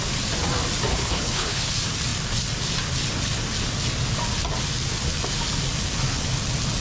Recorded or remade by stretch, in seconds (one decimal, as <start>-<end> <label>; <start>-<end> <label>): 0.0-0.9 recorded; 0.9-1.7 remade; 1.7-6.8 recorded